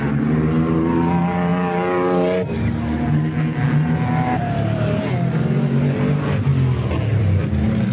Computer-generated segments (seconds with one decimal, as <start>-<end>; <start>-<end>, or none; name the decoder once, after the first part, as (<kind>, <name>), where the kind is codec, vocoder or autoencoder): none